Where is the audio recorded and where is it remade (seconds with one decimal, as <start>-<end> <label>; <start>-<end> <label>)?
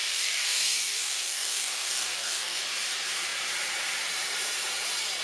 0.0-2.6 remade; 2.6-5.2 recorded